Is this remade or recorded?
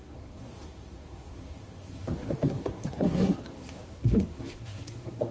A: remade